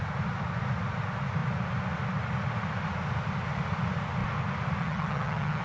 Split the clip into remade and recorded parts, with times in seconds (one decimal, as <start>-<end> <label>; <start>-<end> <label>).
0.0-4.8 recorded; 4.8-5.6 remade